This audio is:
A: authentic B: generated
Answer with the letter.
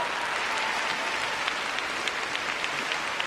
A